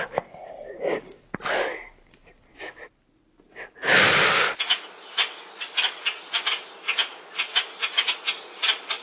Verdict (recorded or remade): recorded